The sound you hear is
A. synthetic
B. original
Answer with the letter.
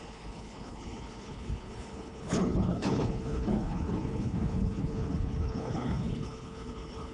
A